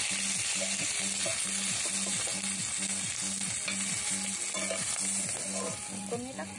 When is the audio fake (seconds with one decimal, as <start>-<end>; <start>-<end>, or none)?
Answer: none